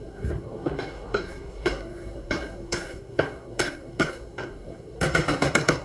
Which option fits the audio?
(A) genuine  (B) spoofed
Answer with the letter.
B